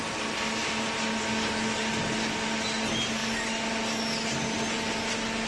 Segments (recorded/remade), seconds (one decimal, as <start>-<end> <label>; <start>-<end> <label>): 0.0-5.5 recorded